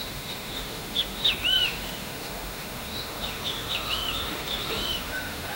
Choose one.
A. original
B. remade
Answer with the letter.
B